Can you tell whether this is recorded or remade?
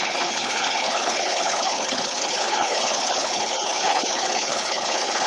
remade